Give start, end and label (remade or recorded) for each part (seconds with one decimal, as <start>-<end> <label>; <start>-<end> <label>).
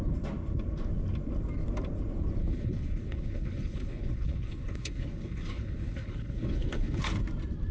0.0-2.4 recorded; 2.4-7.0 remade; 7.0-7.7 recorded